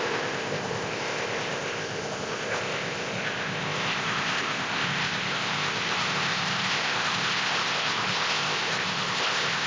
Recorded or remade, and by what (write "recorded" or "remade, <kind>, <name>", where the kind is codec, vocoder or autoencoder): remade, codec, ZipCodec